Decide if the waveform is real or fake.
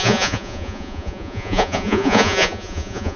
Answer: fake